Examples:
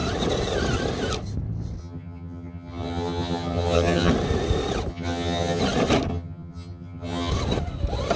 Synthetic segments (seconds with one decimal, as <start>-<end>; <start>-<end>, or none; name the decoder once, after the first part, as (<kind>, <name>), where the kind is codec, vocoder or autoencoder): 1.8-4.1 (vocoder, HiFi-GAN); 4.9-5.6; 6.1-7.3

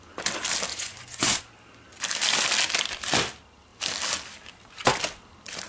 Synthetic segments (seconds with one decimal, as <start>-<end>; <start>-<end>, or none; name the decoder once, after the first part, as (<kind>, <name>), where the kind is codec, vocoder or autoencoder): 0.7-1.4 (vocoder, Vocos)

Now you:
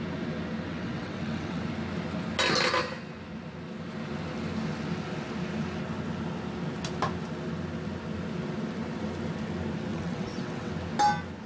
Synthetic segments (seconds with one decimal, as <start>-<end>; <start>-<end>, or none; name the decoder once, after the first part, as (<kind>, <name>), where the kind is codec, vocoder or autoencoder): 0.7-1.6 (vocoder, WaveNeXt); 9.9-10.7